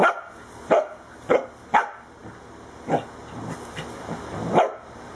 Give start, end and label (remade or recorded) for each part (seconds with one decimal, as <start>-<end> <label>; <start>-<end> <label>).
0.0-5.1 recorded